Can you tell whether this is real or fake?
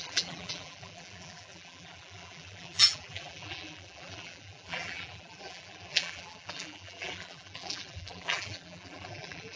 fake